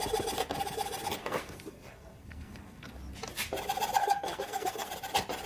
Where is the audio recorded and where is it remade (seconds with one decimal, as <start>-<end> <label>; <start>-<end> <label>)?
0.0-1.2 recorded; 1.2-2.9 remade; 2.9-4.0 recorded; 4.0-4.9 remade; 4.9-5.5 recorded

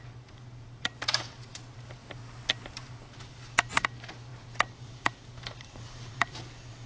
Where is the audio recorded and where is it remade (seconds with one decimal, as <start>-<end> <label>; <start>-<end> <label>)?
0.0-2.0 remade; 2.0-3.1 recorded; 3.1-6.9 remade